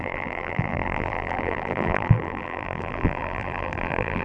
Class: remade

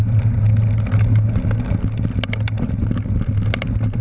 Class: recorded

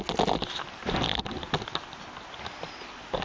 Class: recorded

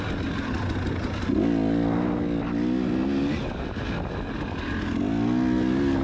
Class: recorded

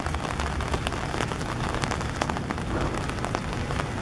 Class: recorded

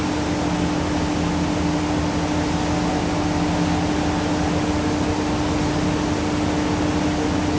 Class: recorded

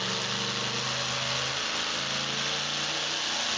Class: recorded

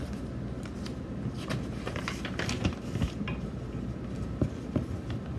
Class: recorded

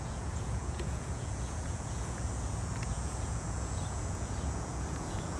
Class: remade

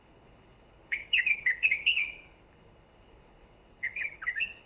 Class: remade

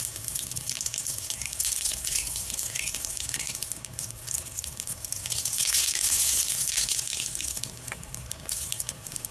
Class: remade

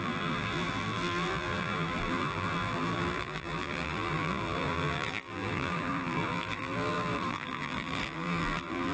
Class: remade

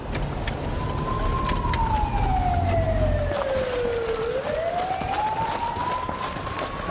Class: recorded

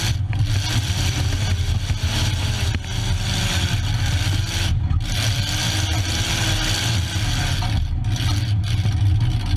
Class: recorded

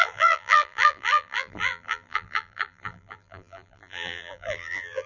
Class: remade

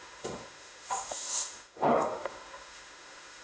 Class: remade